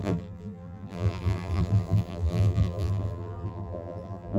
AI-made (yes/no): yes